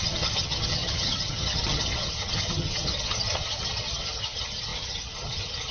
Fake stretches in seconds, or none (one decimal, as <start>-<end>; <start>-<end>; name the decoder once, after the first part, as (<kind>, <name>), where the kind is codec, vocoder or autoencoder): 0.0-5.7 (vocoder, HiFi-GAN)